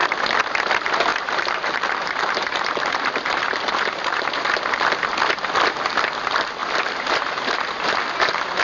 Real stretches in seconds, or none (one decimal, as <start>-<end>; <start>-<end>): 0.0-1.1; 4.5-6.6; 8.0-8.6